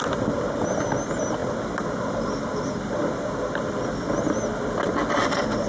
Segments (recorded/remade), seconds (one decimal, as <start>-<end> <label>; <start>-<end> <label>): 0.0-5.7 recorded